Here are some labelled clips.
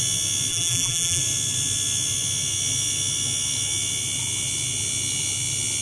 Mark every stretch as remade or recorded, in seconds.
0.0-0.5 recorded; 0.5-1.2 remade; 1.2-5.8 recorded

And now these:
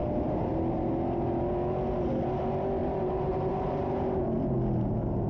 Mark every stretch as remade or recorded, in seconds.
0.0-0.9 remade; 0.9-2.8 recorded; 2.8-4.4 remade; 4.4-5.3 recorded

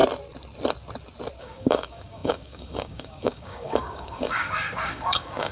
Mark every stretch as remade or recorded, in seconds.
0.0-1.4 recorded; 1.4-5.5 remade